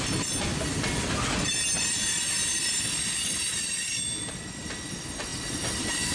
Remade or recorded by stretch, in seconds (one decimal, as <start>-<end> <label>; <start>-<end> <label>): 0.0-2.5 recorded; 2.5-4.5 remade; 4.5-5.3 recorded; 5.3-6.1 remade